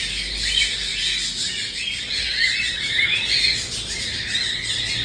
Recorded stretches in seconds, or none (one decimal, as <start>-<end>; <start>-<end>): 0.0-5.0